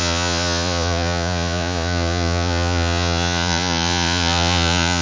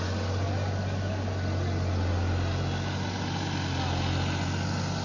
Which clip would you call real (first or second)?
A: second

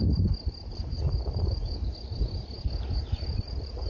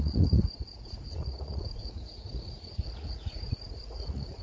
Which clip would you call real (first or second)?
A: first